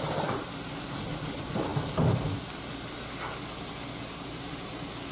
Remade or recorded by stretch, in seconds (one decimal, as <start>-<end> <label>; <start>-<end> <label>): 0.0-5.1 recorded